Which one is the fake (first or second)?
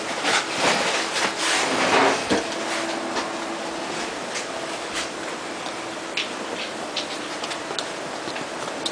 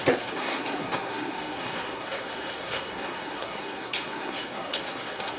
second